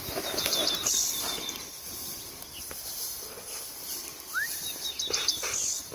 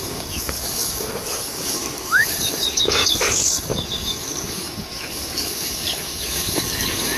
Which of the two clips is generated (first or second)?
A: second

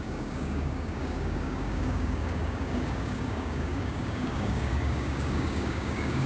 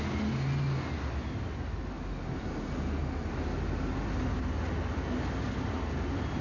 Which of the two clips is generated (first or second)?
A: first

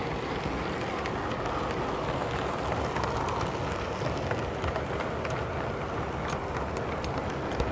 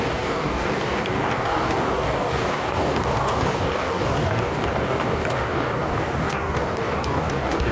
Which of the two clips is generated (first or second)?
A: second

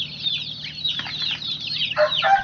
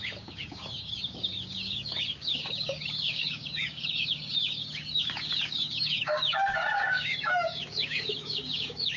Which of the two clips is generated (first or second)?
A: second